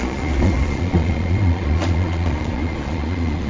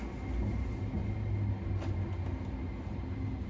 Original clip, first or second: second